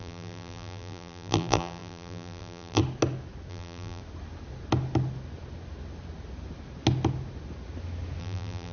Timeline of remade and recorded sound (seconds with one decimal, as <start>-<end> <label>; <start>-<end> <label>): 0.0-2.8 remade; 2.8-3.5 recorded; 3.5-4.0 remade; 4.0-8.2 recorded; 8.2-8.7 remade